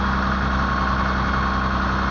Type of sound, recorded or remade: recorded